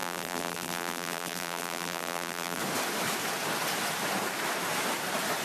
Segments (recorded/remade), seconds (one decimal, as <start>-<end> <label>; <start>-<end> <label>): 0.0-2.6 remade; 2.6-5.4 recorded